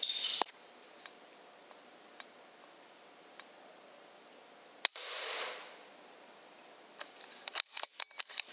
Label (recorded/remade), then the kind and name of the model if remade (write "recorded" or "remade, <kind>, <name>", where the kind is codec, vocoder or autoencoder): recorded